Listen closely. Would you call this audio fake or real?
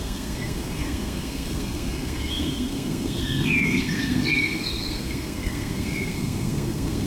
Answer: fake